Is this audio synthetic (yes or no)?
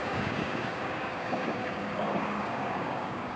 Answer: yes